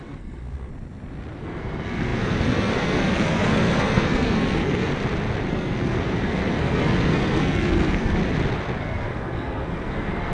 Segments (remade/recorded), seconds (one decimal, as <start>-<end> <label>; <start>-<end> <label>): 0.0-0.7 remade; 0.7-1.4 recorded; 1.4-4.9 remade; 4.9-5.5 recorded; 5.5-8.2 remade; 8.2-8.8 recorded; 8.8-10.3 remade